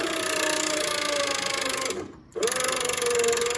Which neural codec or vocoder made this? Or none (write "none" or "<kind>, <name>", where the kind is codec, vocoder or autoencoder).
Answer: none